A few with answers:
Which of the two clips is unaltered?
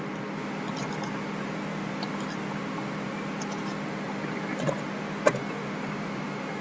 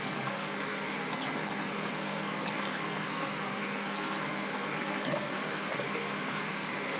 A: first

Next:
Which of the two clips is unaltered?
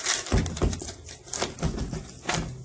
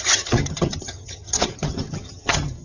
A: first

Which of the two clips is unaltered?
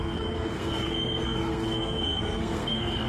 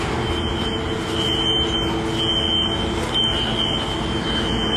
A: second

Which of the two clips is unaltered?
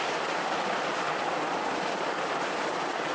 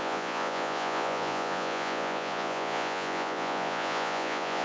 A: first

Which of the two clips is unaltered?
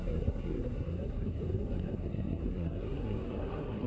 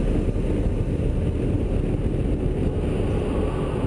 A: second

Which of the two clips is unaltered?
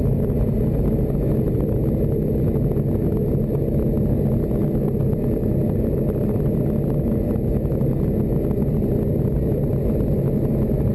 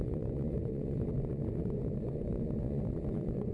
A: first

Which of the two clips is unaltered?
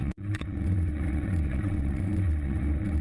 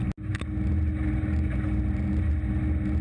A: second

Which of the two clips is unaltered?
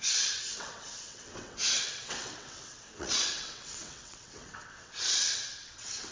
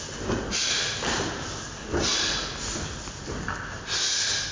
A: second